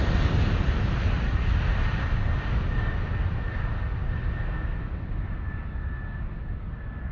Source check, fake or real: real